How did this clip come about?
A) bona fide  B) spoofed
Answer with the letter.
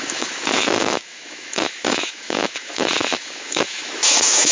B